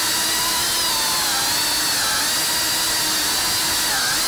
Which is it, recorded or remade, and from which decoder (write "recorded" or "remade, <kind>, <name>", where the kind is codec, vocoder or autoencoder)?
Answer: recorded